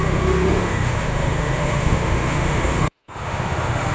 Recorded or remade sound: remade